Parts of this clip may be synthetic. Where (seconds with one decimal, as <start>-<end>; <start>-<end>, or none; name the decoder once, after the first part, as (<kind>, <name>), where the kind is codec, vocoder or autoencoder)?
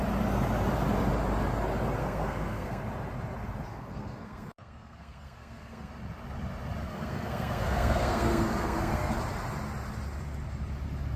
2.0-2.8 (codec, SNAC); 3.7-5.9; 6.8-9.1